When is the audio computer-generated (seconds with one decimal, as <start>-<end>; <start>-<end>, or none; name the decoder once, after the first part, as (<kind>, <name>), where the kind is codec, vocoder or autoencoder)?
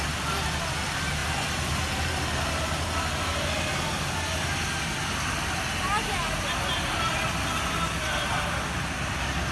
none